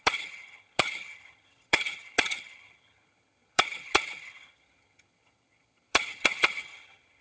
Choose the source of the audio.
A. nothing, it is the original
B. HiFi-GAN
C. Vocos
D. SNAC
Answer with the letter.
B